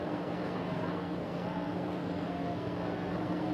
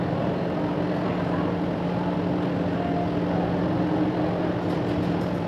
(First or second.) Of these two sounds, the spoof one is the first